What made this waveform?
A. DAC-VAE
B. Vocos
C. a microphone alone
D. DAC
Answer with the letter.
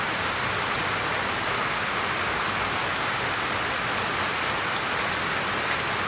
C